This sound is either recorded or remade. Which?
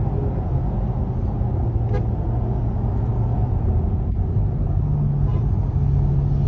recorded